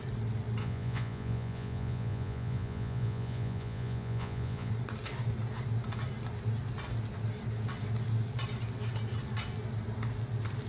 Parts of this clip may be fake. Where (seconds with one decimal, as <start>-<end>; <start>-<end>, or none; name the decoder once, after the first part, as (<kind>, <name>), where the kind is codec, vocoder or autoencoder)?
0.6-4.7 (vocoder, Vocos)